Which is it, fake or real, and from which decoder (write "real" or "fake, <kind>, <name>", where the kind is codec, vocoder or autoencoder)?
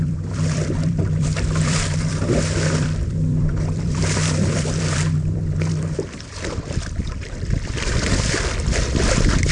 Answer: fake, vocoder, BigVGAN v2